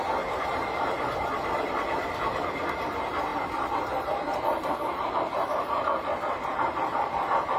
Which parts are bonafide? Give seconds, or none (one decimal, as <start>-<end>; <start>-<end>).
none